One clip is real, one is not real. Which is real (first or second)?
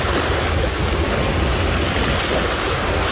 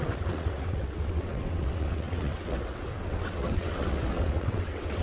first